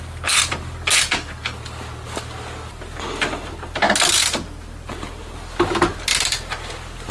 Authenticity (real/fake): real